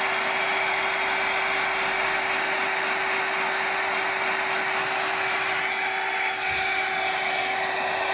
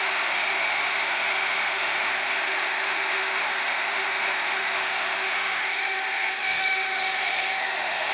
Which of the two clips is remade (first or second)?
second